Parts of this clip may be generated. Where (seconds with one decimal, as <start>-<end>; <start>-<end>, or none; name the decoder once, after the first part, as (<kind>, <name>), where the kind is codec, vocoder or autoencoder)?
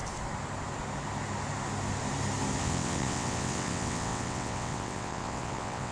2.6-5.9 (vocoder, WaveNeXt)